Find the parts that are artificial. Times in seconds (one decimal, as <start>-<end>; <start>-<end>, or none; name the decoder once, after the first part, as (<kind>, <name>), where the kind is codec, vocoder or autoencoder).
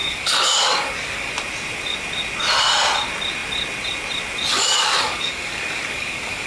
0.0-1.3 (codec, DAC); 4.5-6.5